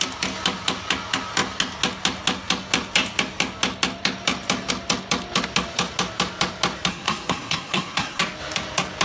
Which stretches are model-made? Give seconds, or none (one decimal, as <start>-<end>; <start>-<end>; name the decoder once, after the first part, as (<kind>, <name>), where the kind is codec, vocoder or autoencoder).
6.9-8.2 (codec, SNAC)